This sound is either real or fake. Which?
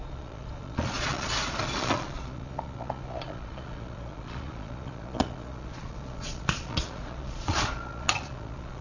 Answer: fake